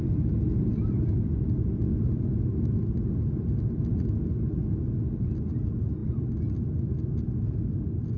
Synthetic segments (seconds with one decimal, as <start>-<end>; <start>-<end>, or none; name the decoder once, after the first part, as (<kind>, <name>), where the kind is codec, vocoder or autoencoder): none